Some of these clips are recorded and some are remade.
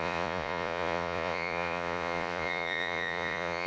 remade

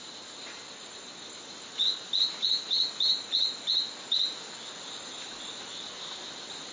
recorded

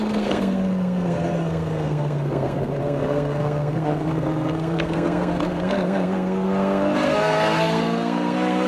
remade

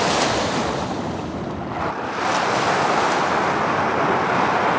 recorded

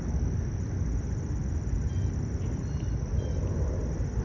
recorded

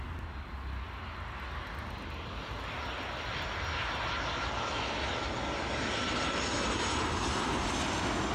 recorded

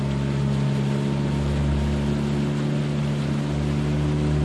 recorded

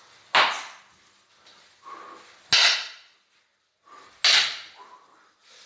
recorded